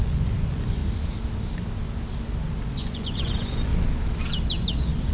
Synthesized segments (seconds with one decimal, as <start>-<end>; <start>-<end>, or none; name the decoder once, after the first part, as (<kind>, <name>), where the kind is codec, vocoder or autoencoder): 0.0-0.8 (vocoder, Vocos); 2.7-3.7